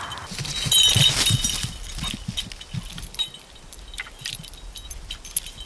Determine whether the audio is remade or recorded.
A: recorded